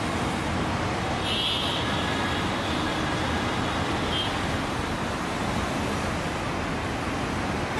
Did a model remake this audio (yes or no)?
no